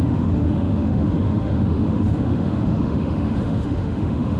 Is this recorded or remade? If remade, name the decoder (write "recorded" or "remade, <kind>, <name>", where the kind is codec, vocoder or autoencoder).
remade, autoencoder, DAC-VAE